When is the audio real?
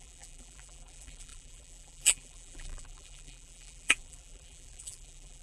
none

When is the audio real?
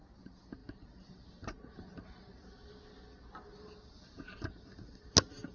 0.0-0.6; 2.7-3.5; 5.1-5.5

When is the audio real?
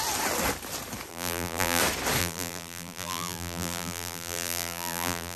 0.0-1.1; 1.8-2.2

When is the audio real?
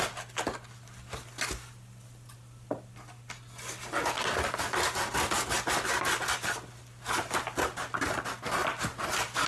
0.0-8.6; 9.1-9.5